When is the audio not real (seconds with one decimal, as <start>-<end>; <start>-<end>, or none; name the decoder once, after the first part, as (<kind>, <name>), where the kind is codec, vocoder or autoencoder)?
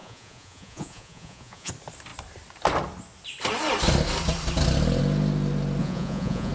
0.0-1.7 (vocoder, Vocos); 5.8-6.5